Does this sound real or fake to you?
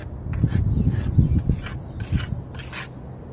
real